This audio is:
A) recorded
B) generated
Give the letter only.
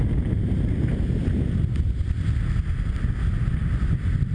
A